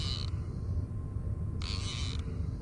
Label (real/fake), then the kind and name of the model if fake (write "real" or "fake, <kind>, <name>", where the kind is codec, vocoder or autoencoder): real